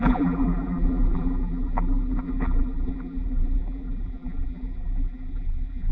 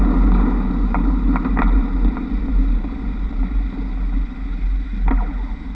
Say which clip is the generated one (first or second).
first